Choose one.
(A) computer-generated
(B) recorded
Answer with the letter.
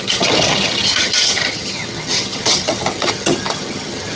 A